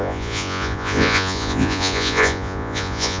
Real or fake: fake